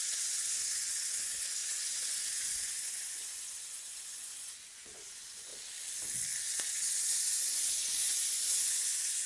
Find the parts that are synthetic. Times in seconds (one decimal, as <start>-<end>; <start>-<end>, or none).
0.0-5.5; 6.4-9.3